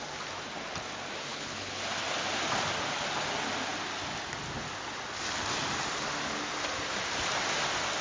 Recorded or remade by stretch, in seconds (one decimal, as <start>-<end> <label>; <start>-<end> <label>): 0.0-1.3 recorded; 1.3-1.8 remade; 1.8-8.0 recorded

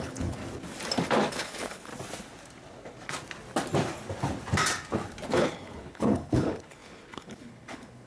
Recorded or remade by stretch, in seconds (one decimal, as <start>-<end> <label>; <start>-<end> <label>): 0.0-0.4 remade; 0.4-1.3 recorded; 1.3-1.9 remade; 1.9-5.3 recorded; 5.3-8.1 remade

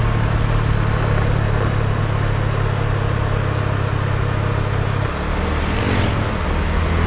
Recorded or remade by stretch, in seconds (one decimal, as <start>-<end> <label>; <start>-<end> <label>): 0.0-7.1 recorded

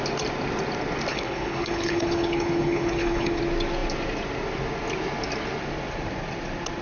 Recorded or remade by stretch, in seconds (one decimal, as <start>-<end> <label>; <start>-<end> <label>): 0.0-1.1 recorded; 1.1-3.4 remade; 3.4-6.8 recorded